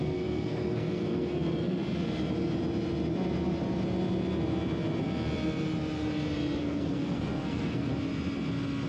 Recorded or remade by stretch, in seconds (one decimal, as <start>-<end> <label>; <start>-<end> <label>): 0.0-1.8 remade; 1.8-6.6 recorded; 6.6-7.9 remade; 7.9-8.9 recorded